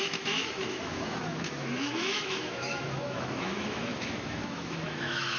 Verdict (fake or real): fake